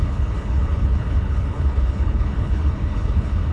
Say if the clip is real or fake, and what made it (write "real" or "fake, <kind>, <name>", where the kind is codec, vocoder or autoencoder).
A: fake, codec, HILCodec